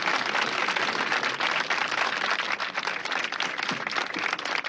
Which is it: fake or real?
real